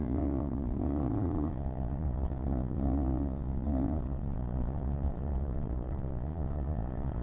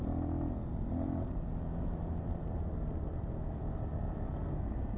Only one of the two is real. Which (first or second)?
second